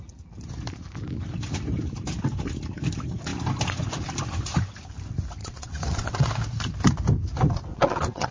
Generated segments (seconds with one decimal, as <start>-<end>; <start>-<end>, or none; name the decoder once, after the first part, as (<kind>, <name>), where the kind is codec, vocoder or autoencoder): 5.4-6.3 (vocoder, WaveNeXt); 7.7-8.3